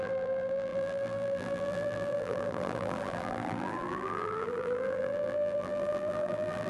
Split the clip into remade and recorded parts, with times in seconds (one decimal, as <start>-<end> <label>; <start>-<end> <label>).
0.0-6.7 remade